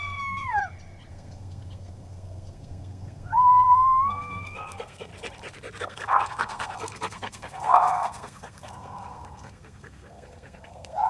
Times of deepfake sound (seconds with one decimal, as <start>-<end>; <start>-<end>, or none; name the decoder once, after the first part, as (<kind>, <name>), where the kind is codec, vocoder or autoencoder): 0.0-0.6 (codec, SNAC); 1.1-5.1; 5.8-11.1